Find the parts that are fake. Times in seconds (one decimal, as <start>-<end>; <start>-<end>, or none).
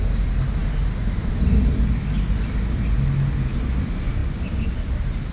none